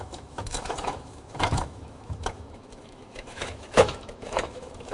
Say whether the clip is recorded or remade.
remade